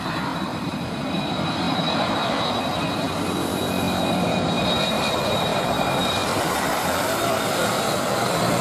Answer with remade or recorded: remade